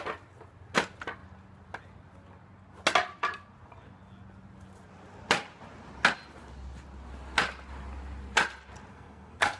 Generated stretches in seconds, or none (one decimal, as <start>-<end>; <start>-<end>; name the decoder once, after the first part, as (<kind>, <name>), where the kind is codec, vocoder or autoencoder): 8.9-9.6 (codec, SNAC)